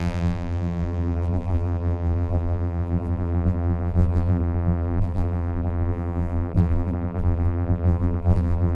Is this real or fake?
fake